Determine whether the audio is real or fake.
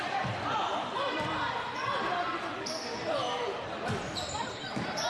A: fake